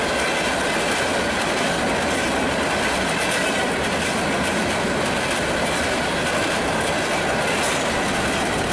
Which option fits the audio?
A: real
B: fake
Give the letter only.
A